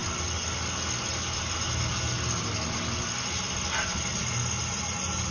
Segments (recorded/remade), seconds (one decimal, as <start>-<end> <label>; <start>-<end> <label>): 0.0-5.3 recorded